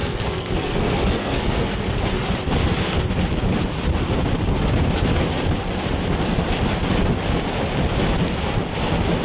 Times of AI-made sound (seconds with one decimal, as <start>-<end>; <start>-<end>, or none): 0.0-1.9